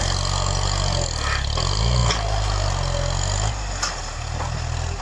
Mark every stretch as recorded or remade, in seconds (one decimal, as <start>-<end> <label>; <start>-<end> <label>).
0.0-5.0 recorded